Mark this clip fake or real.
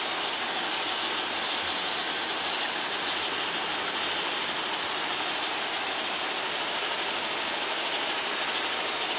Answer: real